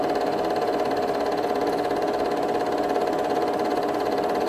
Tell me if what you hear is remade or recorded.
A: recorded